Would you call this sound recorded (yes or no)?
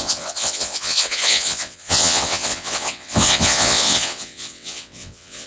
no